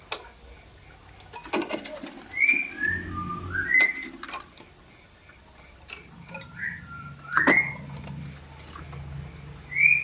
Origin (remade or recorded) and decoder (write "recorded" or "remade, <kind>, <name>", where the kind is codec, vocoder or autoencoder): recorded